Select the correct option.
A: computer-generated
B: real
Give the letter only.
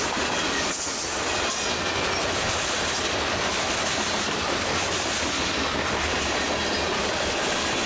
B